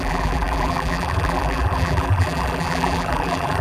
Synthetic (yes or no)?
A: yes